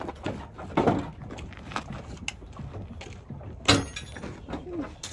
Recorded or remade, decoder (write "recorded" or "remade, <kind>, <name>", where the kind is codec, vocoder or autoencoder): recorded